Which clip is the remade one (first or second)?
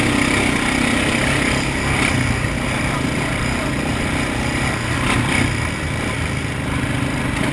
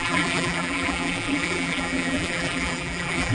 second